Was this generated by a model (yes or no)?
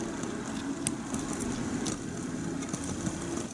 no